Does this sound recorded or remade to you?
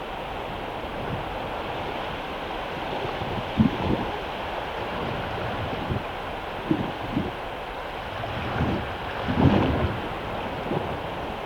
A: recorded